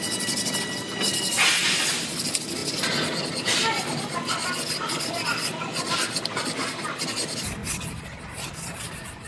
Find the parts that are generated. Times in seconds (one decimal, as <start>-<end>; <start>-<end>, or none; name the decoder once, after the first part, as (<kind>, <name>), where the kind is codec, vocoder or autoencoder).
none